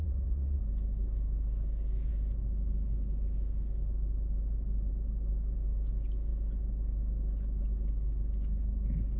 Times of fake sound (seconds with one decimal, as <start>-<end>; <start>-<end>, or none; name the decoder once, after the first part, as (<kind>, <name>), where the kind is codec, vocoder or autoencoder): 0.0-0.6 (vocoder, Vocos)